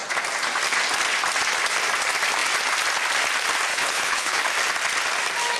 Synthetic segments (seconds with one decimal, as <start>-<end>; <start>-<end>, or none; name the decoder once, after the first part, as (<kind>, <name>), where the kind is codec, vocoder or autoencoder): 3.7-4.4 (codec, HILCodec)